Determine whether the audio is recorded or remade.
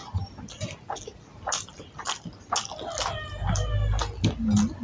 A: recorded